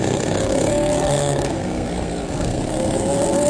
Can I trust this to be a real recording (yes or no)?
no